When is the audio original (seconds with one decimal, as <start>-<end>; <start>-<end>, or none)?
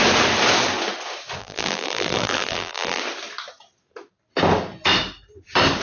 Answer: 0.0-1.4; 3.0-5.8